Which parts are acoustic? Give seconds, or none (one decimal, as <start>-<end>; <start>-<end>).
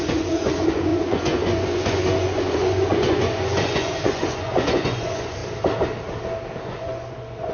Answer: 5.4-6.6